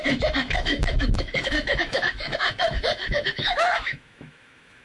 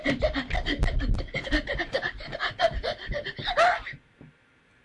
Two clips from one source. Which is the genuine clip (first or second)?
second